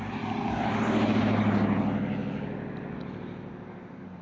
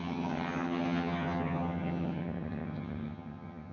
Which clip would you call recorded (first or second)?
first